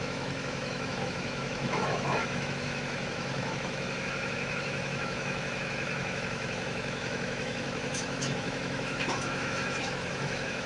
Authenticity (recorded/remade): remade